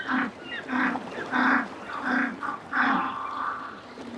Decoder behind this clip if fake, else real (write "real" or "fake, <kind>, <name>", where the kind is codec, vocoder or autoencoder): real